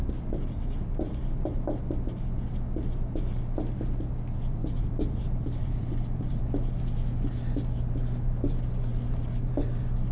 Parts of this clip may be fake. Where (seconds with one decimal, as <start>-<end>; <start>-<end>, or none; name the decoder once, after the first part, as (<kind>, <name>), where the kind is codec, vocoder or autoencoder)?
4.6-6.4 (vocoder, BigVGAN v2)